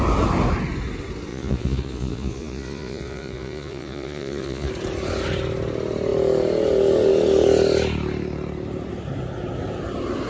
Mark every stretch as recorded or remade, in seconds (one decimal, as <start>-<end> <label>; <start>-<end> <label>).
0.0-1.3 recorded; 1.3-4.7 remade; 4.7-10.3 recorded